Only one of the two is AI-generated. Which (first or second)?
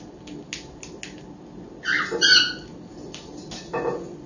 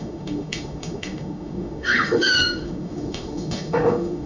second